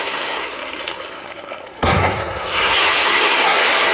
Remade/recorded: remade